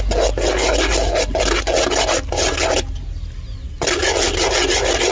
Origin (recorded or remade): recorded